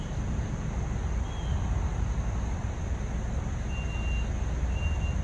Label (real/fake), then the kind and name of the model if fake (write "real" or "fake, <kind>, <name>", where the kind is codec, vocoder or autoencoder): real